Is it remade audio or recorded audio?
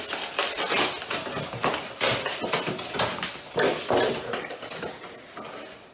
recorded